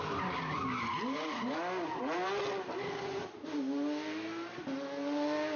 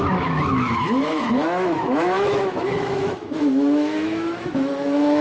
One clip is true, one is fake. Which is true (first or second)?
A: first